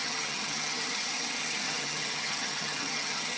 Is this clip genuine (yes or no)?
no